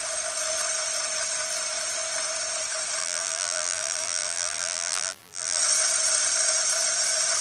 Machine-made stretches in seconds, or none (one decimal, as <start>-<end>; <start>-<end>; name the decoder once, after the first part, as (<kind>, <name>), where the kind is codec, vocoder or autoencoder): 3.0-5.6 (vocoder, BigVGAN v2)